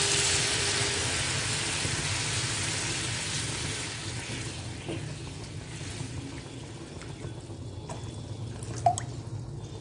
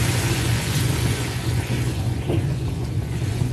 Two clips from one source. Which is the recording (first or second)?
first